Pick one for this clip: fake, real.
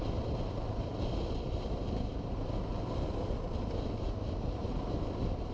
real